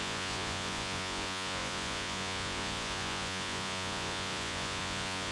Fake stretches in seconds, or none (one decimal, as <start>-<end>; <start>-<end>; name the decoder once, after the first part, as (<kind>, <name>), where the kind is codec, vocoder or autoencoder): 0.0-5.3 (vocoder, Vocos)